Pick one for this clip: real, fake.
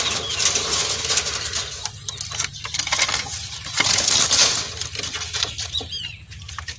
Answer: real